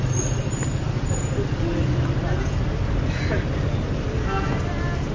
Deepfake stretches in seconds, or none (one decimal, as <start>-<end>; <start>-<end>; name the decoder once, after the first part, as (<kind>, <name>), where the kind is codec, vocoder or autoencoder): none